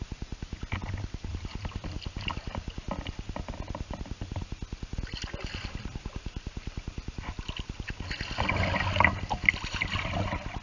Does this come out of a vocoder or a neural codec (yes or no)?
no